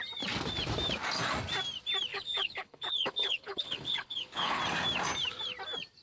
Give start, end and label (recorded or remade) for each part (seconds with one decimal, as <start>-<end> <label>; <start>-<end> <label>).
0.0-2.1 recorded; 2.1-4.6 remade; 4.6-6.0 recorded